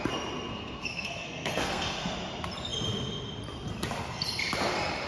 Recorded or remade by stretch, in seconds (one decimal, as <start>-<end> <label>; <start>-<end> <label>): 0.0-0.5 recorded; 0.5-2.1 remade; 2.1-5.1 recorded